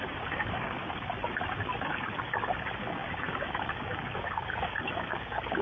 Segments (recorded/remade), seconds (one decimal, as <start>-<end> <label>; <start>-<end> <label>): 0.0-0.8 remade; 0.8-1.9 recorded; 1.9-5.6 remade